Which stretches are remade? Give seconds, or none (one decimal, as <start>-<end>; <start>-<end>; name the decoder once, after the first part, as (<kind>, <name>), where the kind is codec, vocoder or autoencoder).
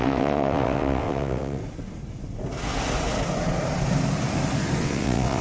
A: 0.0-1.6 (vocoder, WaveNeXt); 4.8-5.4